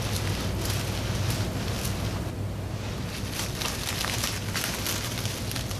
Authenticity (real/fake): real